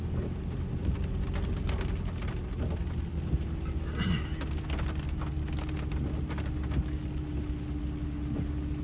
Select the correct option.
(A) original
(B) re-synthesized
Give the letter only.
A